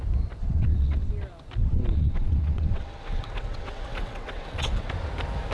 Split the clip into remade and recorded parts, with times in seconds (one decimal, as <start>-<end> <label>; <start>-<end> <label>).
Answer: 0.0-0.4 recorded; 0.4-1.1 remade; 1.1-1.6 recorded; 1.6-4.9 remade; 4.9-5.5 recorded